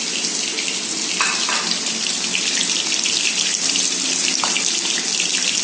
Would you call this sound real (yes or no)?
yes